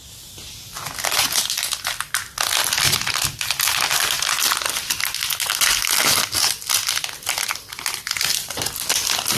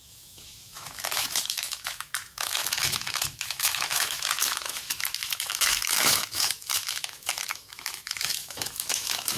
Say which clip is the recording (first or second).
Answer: first